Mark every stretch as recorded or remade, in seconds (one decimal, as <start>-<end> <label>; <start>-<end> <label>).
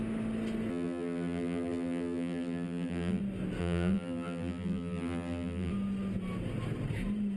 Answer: 0.0-0.7 recorded; 0.7-3.2 remade; 3.2-3.6 recorded; 3.6-5.7 remade; 5.7-7.4 recorded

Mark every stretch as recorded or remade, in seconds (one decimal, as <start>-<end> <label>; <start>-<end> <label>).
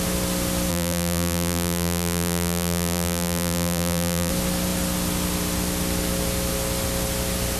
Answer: 0.0-0.7 recorded; 0.7-4.3 remade; 4.3-7.6 recorded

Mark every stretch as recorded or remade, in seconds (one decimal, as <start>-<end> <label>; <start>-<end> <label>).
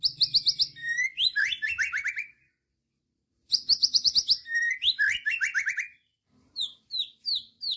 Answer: 0.0-0.8 recorded; 0.8-2.5 remade; 2.5-3.0 recorded; 3.0-4.1 remade; 4.1-5.9 recorded; 5.9-6.9 remade; 6.9-7.8 recorded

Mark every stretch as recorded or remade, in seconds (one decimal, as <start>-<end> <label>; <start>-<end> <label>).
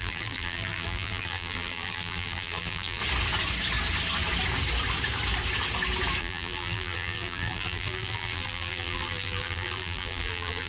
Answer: 0.0-3.0 remade; 3.0-6.2 recorded; 6.2-10.7 remade